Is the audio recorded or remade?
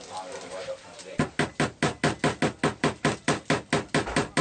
recorded